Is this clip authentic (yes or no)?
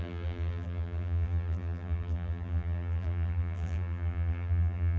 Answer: no